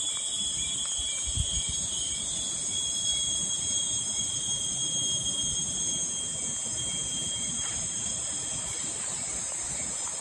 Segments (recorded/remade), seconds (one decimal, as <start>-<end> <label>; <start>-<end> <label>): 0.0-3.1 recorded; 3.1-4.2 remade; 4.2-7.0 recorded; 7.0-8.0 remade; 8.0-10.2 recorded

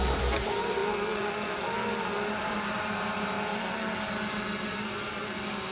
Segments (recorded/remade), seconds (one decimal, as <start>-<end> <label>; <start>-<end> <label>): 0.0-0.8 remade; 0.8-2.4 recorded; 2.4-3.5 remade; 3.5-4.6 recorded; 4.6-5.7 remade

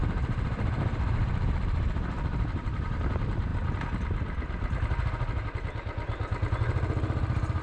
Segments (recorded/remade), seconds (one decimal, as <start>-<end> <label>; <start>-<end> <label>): 0.0-3.5 remade; 3.5-7.6 recorded

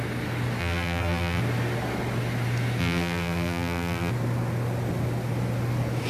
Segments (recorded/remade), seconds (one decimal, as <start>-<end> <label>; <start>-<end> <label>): 0.0-0.6 recorded; 0.6-1.4 remade; 1.4-2.8 recorded; 2.8-4.1 remade; 4.1-6.1 recorded

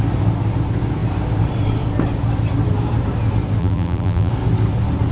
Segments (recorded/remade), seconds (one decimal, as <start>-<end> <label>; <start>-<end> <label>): 0.0-3.6 recorded; 3.6-4.3 remade; 4.3-5.1 recorded

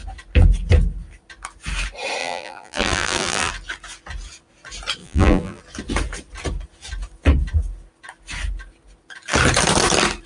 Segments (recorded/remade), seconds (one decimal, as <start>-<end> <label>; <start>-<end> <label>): 0.0-2.2 recorded; 2.2-3.5 remade; 3.5-5.0 recorded; 5.0-5.6 remade; 5.6-10.3 recorded

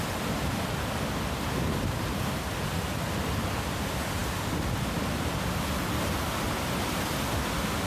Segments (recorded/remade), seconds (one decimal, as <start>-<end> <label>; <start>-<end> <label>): 0.0-7.9 recorded

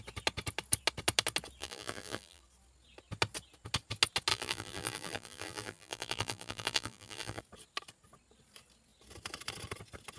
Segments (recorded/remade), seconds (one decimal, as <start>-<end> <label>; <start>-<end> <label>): 0.0-1.6 recorded; 1.6-2.4 remade; 2.4-4.3 recorded; 4.3-7.4 remade; 7.4-10.2 recorded